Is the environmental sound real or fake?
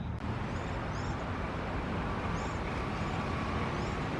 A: real